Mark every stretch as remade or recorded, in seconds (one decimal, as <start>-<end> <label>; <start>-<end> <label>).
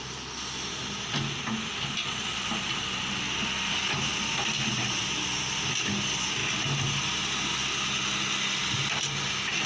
0.0-9.7 recorded